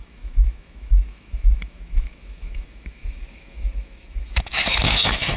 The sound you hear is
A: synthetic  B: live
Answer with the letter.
A